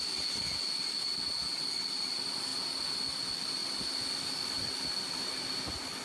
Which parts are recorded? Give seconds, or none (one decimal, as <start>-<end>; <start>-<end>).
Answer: 0.0-6.0